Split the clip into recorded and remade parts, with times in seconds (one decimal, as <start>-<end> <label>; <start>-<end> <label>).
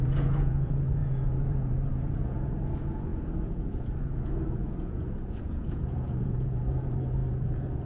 0.0-7.9 remade